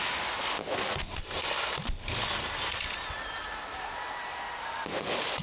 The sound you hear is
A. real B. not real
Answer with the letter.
A